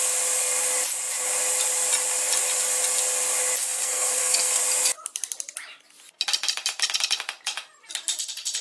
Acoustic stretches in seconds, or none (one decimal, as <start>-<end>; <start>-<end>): 0.0-3.6; 4.6-8.6